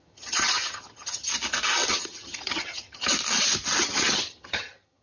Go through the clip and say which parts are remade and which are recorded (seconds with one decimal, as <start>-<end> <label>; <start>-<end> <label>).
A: 0.0-1.3 remade; 1.3-1.9 recorded; 1.9-3.1 remade; 3.1-3.8 recorded; 3.8-5.0 remade